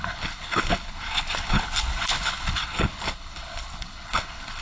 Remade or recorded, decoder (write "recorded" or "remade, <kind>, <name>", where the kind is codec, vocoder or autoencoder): remade, codec, HILCodec